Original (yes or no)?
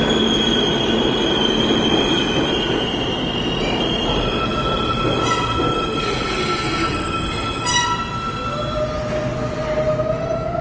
yes